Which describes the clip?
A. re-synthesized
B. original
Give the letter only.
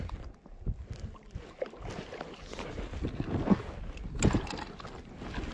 B